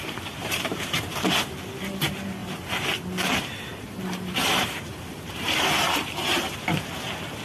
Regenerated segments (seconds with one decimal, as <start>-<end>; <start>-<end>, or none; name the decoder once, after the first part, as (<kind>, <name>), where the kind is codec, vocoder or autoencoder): 0.4-1.3 (vocoder, BigVGAN v2); 2.4-2.9; 3.7-6.5